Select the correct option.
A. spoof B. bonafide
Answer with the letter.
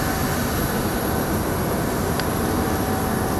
B